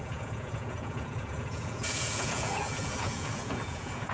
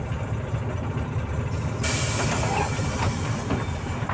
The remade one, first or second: first